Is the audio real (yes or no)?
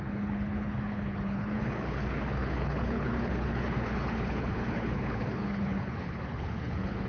no